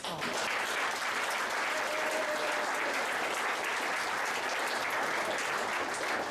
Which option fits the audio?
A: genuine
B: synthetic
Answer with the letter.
A